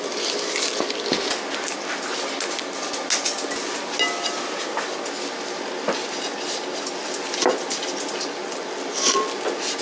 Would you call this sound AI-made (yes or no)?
no